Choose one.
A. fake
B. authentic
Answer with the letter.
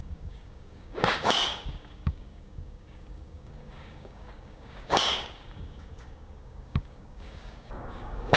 A